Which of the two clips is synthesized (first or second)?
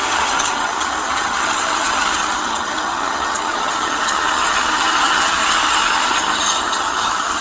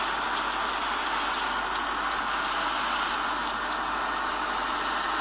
first